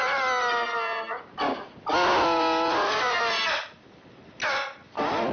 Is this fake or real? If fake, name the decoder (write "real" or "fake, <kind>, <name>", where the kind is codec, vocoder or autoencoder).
real